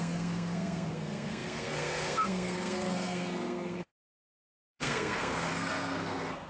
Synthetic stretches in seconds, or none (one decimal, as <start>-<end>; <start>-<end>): 0.0-6.5